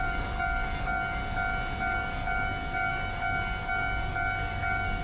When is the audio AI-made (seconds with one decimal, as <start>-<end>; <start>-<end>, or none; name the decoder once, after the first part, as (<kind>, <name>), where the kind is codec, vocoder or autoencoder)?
0.0-1.2 (codec, DAC); 1.8-5.0